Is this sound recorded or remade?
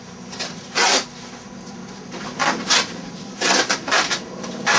recorded